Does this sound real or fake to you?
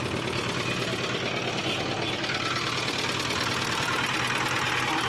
real